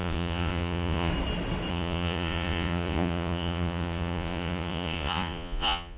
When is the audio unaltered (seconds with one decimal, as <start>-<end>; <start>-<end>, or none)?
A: 1.1-1.7